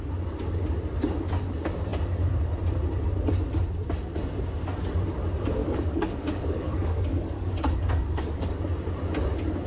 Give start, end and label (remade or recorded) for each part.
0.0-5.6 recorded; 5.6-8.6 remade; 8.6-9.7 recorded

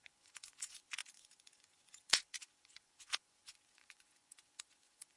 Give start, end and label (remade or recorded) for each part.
0.0-5.2 remade

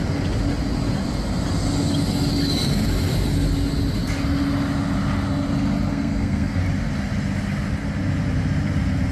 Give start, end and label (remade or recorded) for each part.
0.0-5.9 recorded; 5.9-6.6 remade; 6.6-9.1 recorded

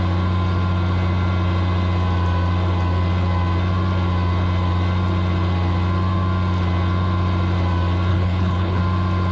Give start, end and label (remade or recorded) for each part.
0.0-8.1 recorded; 8.1-8.8 remade; 8.8-9.3 recorded

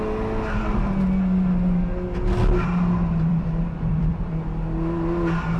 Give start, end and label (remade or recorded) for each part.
0.0-3.3 recorded; 3.3-4.3 remade; 4.3-5.6 recorded

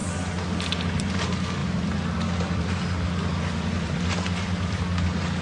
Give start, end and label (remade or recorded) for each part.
0.0-1.6 recorded; 1.6-4.8 remade; 4.8-5.4 recorded

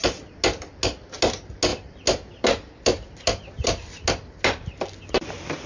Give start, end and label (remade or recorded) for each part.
0.0-5.7 recorded